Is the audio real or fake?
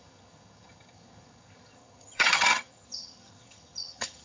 fake